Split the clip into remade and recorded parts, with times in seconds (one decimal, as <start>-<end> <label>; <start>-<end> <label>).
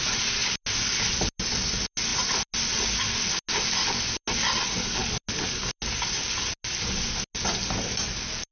0.0-8.5 recorded